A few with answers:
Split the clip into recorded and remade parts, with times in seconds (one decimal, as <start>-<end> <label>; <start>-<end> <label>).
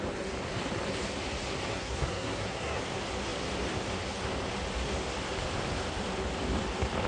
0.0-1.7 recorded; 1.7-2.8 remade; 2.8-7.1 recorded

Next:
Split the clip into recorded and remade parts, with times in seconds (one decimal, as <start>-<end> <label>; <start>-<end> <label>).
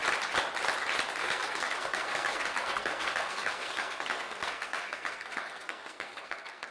0.0-1.2 recorded; 1.2-6.7 remade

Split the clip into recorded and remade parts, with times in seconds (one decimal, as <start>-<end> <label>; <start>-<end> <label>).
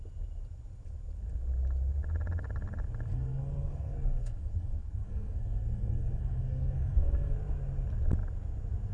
0.0-3.1 recorded; 3.1-7.3 remade; 7.3-8.9 recorded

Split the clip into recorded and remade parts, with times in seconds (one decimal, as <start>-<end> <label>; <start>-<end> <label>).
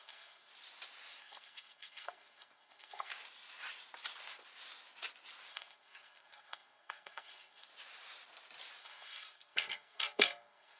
0.0-0.5 remade; 0.5-1.2 recorded; 1.2-3.1 remade; 3.1-5.5 recorded; 5.5-7.7 remade; 7.7-8.8 recorded; 8.8-10.8 remade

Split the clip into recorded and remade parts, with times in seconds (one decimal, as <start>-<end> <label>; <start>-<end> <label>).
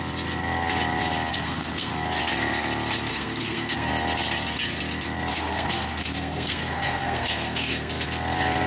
0.0-1.3 recorded; 1.3-1.9 remade; 1.9-3.1 recorded; 3.1-3.9 remade; 3.9-5.3 recorded; 5.3-7.9 remade; 7.9-8.7 recorded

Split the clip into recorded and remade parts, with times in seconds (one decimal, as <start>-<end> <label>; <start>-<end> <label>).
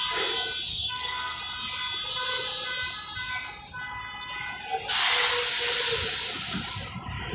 0.0-0.7 recorded; 0.7-1.4 remade; 1.4-7.3 recorded